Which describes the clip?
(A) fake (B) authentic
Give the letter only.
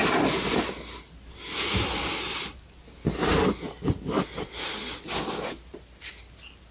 B